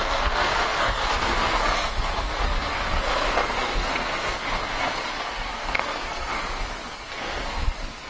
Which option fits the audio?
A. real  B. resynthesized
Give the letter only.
B